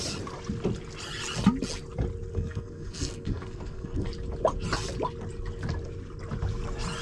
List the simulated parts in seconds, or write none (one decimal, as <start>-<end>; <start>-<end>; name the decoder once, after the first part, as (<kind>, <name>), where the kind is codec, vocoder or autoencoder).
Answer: 2.3-4.1 (codec, SNAC)